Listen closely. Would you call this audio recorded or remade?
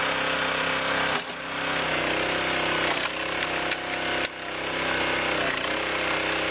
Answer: recorded